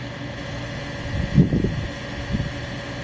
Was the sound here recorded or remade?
recorded